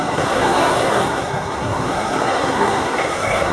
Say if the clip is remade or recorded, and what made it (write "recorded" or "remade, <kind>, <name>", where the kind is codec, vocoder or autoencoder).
remade, codec, SNAC